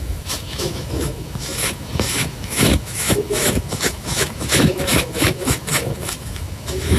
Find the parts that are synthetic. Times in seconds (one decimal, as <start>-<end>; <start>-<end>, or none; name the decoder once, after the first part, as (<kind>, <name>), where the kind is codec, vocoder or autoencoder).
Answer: 0.0-7.0 (autoencoder, DAC-VAE)